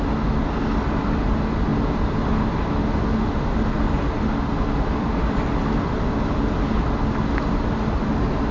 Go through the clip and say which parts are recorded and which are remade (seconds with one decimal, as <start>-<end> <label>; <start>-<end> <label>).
0.0-8.5 recorded